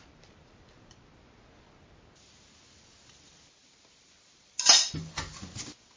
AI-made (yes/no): no